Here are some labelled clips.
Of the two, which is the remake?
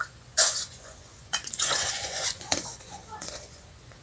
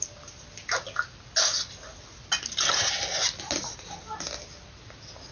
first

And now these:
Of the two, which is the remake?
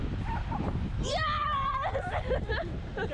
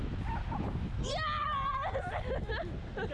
first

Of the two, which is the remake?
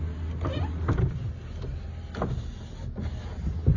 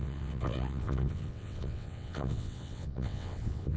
second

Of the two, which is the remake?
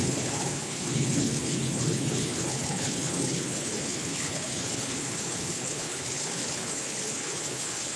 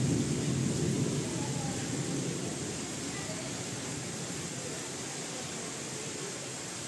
first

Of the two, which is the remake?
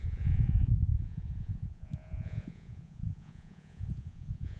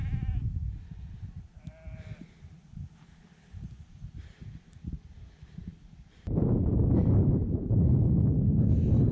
first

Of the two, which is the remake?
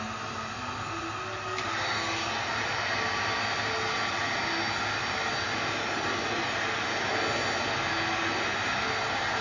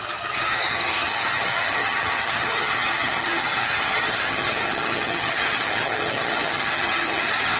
second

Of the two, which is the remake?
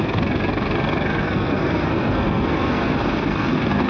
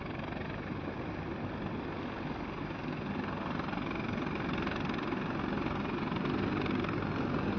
first